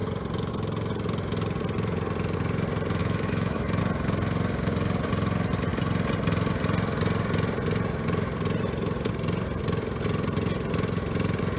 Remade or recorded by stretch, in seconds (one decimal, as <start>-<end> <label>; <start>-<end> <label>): 0.0-3.0 recorded; 3.0-3.8 remade; 3.8-11.6 recorded